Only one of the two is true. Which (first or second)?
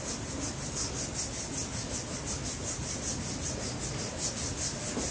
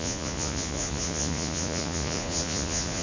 first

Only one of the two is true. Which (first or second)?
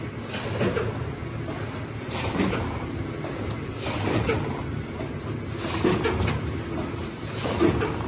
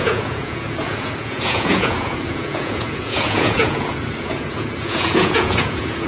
first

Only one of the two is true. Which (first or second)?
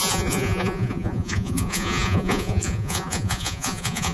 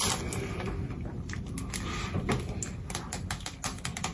second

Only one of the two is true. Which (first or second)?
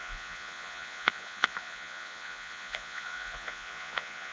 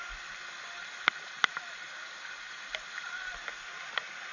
second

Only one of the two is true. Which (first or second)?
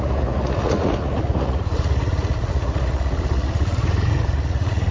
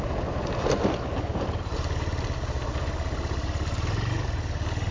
second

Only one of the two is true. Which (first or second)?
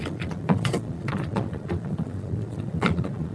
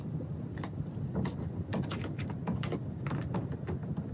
second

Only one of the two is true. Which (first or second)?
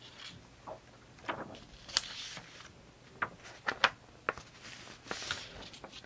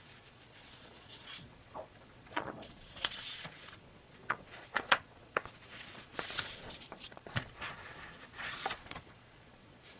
first